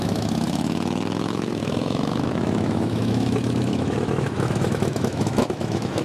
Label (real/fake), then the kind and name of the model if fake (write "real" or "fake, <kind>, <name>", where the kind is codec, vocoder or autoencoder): fake, autoencoder, DAC-VAE